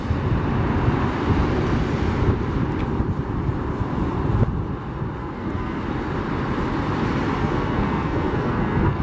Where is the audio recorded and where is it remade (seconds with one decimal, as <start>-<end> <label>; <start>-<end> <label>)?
0.0-5.2 recorded; 5.2-5.8 remade; 5.8-7.4 recorded; 7.4-9.0 remade